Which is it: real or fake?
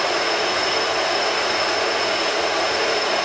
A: fake